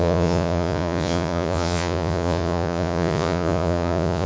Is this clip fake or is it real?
fake